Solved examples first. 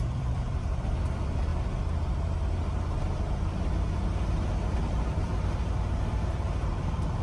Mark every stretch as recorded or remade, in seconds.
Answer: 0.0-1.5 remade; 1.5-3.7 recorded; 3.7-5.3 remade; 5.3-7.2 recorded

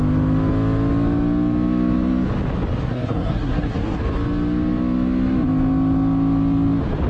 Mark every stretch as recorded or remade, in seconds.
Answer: 0.0-2.8 recorded; 2.8-4.0 remade; 4.0-7.1 recorded

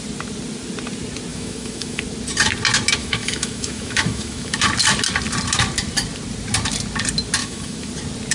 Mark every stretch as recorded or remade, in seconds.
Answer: 0.0-1.3 recorded; 1.3-2.0 remade; 2.0-3.0 recorded; 3.0-4.6 remade; 4.6-7.4 recorded; 7.4-7.9 remade; 7.9-8.3 recorded

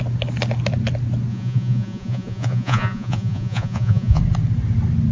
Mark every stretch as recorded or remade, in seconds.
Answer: 0.0-1.3 recorded; 1.3-4.2 remade; 4.2-5.1 recorded

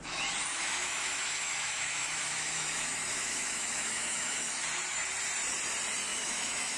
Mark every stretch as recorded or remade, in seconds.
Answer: 0.0-0.5 recorded; 0.5-4.6 remade; 4.6-6.1 recorded; 6.1-6.8 remade